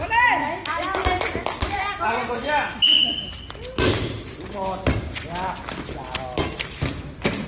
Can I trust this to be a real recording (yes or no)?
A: yes